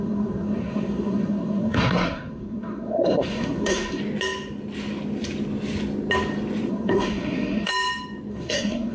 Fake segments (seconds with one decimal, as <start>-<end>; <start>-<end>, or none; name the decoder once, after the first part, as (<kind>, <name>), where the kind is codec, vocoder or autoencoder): 0.0-4.0 (codec, SNAC); 6.7-7.7; 8.3-8.9